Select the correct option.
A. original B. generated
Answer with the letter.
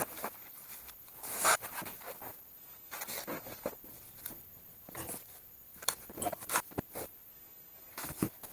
A